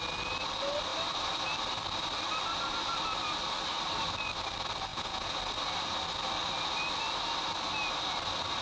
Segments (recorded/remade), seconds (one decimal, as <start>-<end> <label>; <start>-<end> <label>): 0.0-4.9 recorded; 4.9-5.4 remade; 5.4-8.6 recorded